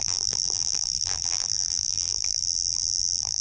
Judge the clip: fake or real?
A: fake